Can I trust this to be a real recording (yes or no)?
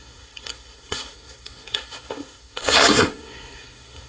no